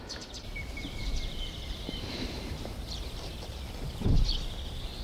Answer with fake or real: fake